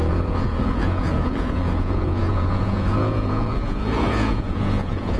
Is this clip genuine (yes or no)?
no